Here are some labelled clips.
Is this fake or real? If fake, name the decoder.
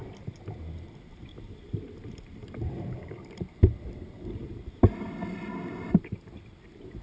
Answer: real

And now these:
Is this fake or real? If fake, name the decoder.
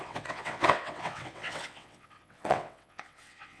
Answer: fake, vocoder, WaveNeXt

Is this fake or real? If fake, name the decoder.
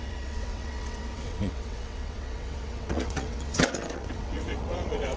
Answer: fake, vocoder, WaveNeXt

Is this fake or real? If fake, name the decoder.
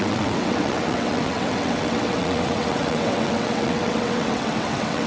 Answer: fake, vocoder, WaveNeXt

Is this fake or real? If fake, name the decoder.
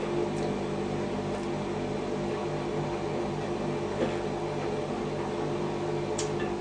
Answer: real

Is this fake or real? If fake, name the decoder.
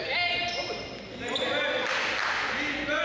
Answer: real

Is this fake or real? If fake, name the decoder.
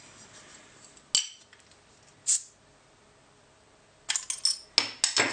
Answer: real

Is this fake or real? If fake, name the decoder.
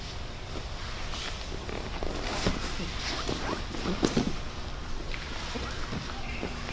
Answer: real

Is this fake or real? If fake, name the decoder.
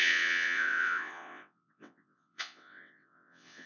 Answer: fake, vocoder, WaveNeXt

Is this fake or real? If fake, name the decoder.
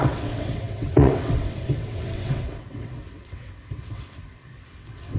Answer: fake, vocoder, WaveNeXt